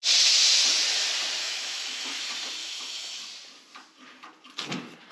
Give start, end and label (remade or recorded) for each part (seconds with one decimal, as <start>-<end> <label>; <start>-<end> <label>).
0.0-1.4 recorded; 1.4-2.2 remade; 2.2-2.6 recorded; 2.6-3.2 remade; 3.2-5.1 recorded